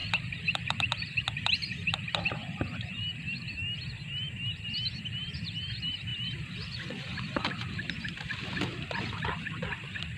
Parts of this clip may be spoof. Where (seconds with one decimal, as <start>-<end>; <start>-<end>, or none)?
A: 0.0-3.0; 6.1-9.3